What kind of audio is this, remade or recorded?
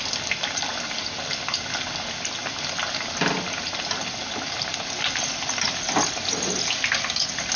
recorded